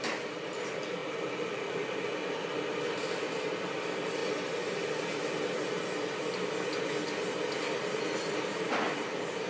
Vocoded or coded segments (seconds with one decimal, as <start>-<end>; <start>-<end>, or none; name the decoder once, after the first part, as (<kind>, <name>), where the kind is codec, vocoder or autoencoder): none